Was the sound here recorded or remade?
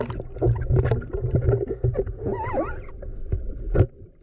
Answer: recorded